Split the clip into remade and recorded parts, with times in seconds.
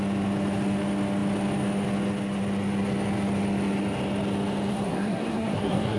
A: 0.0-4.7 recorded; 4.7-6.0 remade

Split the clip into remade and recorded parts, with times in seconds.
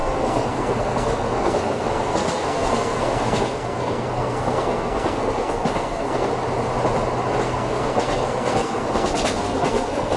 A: 0.0-6.3 remade; 6.3-7.4 recorded; 7.4-10.2 remade